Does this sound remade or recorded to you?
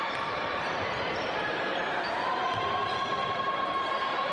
remade